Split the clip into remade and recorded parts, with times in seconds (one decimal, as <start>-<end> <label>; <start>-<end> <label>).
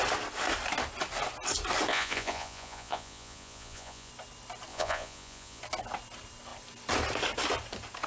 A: 0.0-1.9 recorded; 1.9-4.1 remade; 4.1-4.7 recorded; 4.7-5.6 remade; 5.6-8.1 recorded